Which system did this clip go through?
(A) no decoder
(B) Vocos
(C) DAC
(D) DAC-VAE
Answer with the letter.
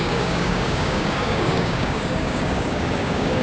C